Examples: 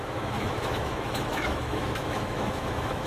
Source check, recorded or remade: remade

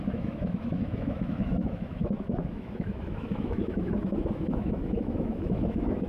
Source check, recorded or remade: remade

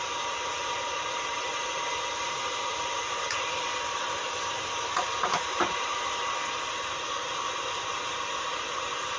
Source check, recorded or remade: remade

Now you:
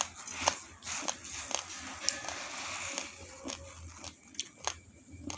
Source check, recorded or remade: recorded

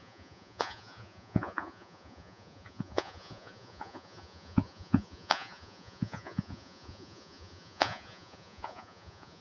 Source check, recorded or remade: remade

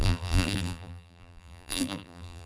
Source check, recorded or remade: remade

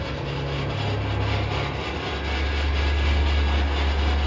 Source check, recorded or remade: recorded